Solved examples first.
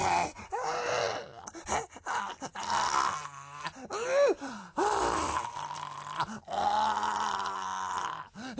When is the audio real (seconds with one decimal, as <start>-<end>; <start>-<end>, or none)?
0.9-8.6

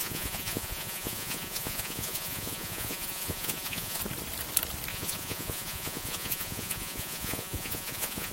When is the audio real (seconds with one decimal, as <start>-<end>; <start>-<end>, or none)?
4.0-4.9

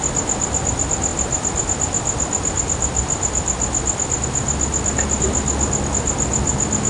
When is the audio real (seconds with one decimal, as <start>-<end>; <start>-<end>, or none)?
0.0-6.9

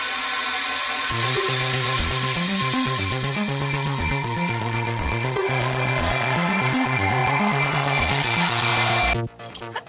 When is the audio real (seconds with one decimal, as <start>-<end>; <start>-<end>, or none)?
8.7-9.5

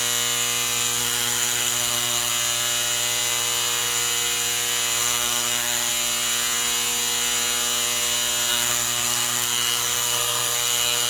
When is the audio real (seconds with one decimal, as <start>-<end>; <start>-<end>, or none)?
0.0-1.0; 2.3-5.0; 5.9-8.5

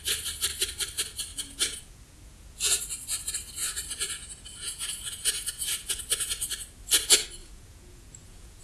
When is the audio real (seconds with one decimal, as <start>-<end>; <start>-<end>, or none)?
0.0-1.3; 2.8-3.6; 6.0-7.4

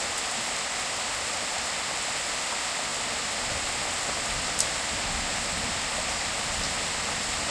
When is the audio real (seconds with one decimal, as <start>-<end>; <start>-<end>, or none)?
0.0-7.5